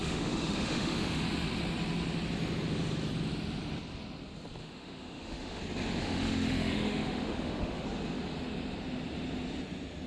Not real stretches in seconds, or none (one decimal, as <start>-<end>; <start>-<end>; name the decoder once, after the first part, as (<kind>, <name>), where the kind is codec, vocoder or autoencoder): 0.0-1.2 (autoencoder, DAC-VAE); 4.6-5.6; 6.0-7.8